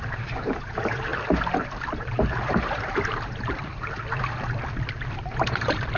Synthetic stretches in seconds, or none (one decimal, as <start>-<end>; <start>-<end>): 0.0-1.1; 2.0-3.7; 5.3-6.0